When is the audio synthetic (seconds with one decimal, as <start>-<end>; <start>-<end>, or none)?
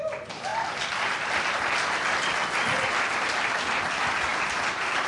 0.0-0.5; 3.0-5.1